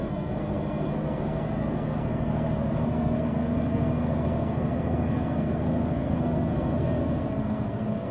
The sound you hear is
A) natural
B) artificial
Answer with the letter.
B